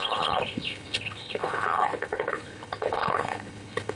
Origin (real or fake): fake